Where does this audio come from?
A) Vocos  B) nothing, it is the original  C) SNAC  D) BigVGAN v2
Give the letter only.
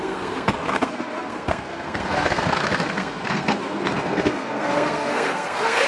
C